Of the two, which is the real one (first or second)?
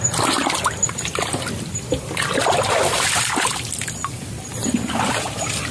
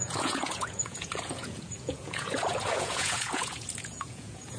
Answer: first